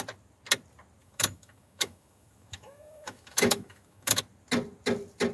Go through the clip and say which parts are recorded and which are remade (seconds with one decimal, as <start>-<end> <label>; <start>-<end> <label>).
0.0-1.0 recorded; 1.0-4.2 remade; 4.2-5.3 recorded